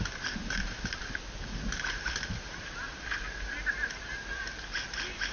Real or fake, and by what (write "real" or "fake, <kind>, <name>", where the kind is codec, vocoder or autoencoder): real